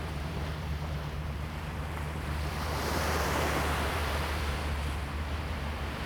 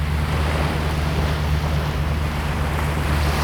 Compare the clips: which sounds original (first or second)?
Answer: second